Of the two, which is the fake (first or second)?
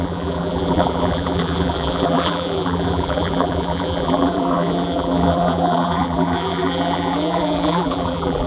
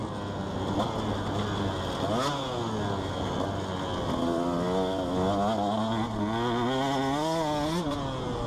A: first